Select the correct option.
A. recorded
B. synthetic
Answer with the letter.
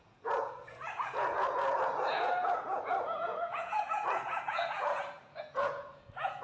B